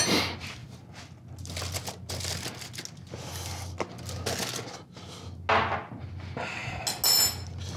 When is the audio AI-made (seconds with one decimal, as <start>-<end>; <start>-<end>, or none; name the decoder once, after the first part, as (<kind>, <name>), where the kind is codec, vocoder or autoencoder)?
none